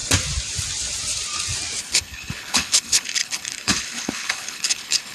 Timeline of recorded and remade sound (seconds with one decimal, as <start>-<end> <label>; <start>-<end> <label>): 0.0-1.8 recorded; 1.8-5.1 remade